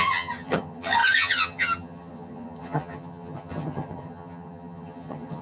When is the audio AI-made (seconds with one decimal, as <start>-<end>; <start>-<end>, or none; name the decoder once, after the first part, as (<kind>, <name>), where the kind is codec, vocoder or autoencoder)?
0.0-5.4 (vocoder, HiFi-GAN)